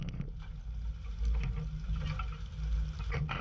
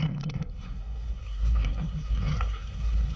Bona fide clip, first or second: first